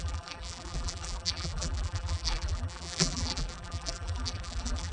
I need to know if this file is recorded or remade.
remade